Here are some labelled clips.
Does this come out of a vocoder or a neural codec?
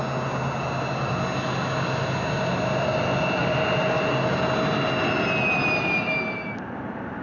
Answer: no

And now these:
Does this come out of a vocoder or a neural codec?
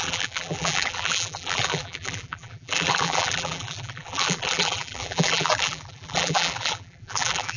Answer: yes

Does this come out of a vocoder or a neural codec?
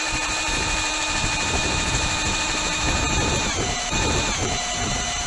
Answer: yes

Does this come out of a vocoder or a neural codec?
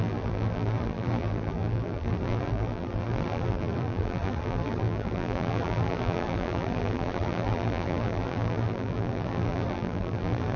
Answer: yes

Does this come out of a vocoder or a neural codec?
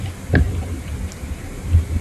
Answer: no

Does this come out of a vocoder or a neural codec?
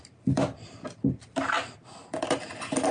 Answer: yes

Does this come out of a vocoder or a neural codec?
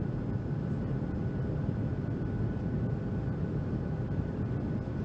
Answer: yes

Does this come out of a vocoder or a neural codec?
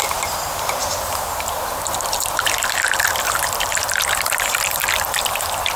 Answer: yes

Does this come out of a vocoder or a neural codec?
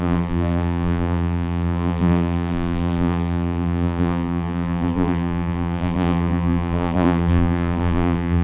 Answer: yes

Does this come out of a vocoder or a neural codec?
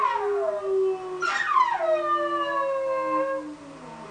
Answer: no